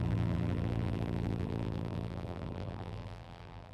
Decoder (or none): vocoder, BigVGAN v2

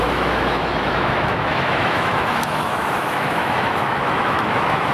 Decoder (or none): autoencoder, DAC-VAE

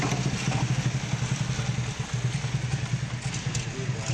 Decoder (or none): none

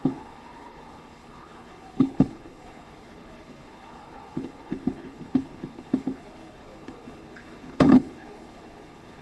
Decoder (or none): codec, HILCodec